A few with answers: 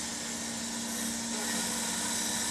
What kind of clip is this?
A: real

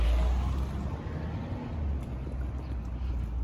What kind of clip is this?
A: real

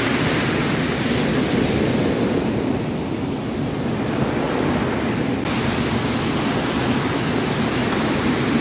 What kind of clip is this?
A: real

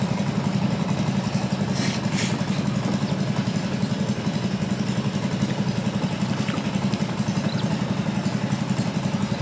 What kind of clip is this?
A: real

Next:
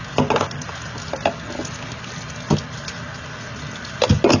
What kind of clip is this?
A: real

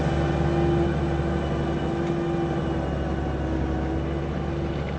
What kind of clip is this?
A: real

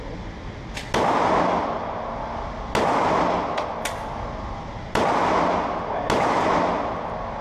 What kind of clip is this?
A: real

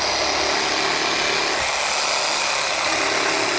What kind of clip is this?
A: real